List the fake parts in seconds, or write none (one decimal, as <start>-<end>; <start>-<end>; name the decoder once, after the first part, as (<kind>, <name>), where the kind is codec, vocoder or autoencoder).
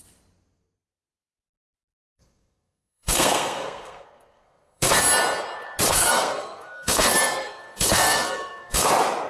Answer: 2.1-4.9 (codec, SNAC); 5.9-8.9